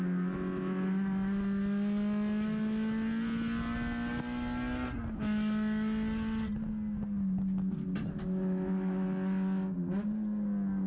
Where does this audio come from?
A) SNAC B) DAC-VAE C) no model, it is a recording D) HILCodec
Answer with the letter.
C